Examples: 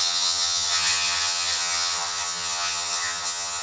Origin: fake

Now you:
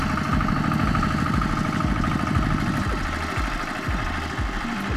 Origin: real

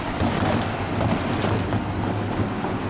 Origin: real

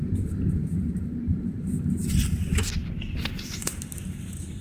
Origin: real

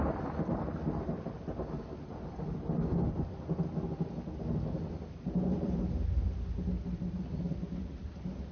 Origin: real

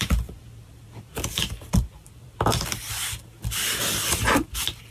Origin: fake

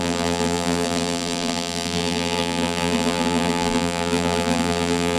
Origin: fake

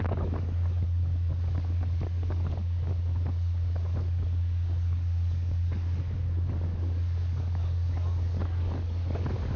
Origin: fake